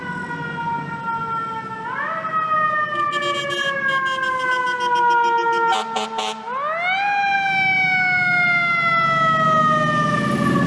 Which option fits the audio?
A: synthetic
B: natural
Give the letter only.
B